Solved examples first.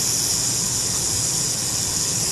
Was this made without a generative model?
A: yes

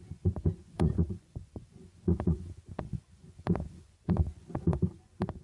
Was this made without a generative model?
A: no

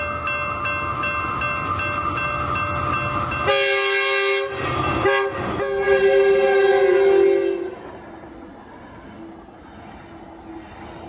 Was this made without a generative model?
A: yes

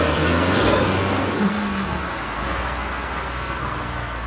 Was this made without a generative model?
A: no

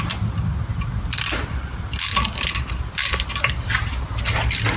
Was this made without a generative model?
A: yes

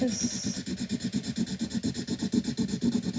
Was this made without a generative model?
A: yes